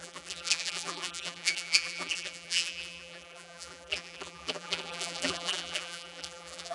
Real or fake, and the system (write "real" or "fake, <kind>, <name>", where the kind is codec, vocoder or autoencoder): fake, vocoder, BigVGAN v2